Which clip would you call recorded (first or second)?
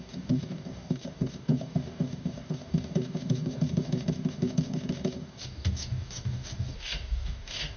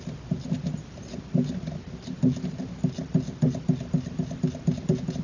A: second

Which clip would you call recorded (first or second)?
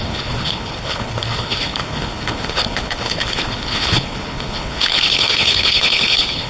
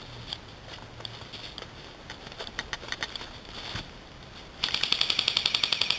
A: second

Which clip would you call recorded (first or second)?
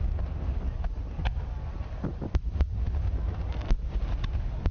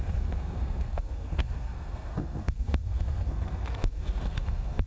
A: first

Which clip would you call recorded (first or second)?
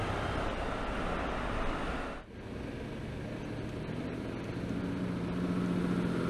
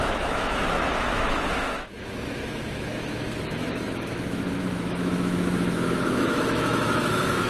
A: first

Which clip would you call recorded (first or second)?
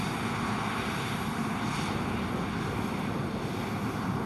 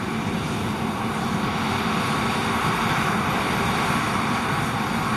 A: first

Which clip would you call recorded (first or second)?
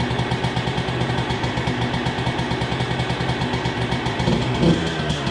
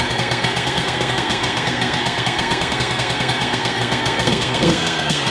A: first